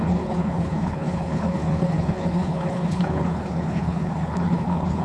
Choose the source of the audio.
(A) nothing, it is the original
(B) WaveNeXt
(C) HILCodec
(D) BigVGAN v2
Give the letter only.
C